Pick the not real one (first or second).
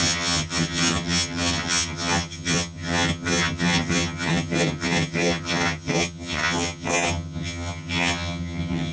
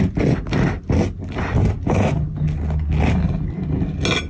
first